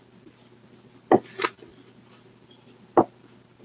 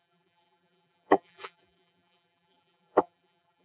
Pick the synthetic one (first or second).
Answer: second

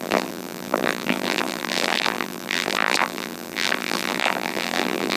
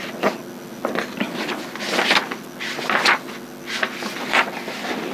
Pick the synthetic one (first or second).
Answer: first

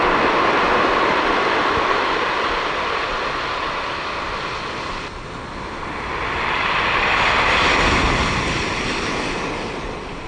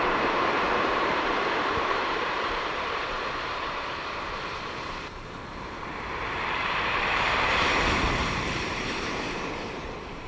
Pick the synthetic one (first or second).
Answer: second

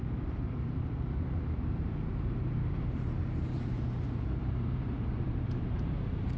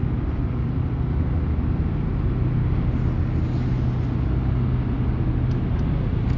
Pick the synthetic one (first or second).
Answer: first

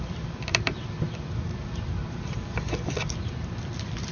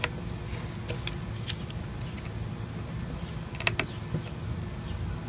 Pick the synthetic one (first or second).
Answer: first